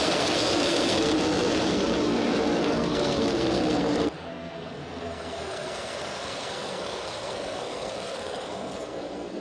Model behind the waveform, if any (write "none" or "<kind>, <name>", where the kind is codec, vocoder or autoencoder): codec, SNAC